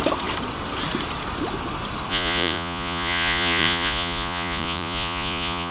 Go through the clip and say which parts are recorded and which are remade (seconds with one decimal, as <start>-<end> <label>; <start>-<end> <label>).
0.0-2.1 recorded; 2.1-5.7 remade